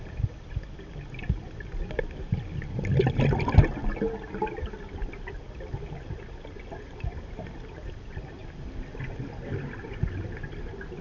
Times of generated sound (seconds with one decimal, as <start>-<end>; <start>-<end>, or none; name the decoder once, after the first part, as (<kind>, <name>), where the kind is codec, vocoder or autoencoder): none